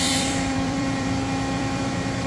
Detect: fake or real fake